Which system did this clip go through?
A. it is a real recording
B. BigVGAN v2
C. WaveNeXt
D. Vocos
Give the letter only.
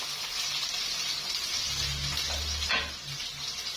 A